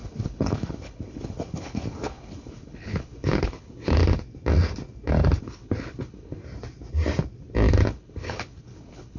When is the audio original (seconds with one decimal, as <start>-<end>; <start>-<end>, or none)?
4.0-5.4; 6.4-7.9